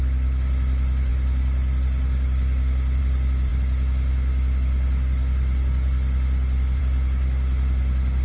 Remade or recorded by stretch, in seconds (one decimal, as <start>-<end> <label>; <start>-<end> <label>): 0.0-8.2 recorded

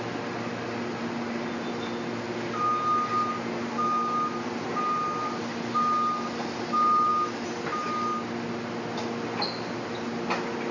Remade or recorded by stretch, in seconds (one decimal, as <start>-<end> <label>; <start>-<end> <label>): 0.0-10.7 recorded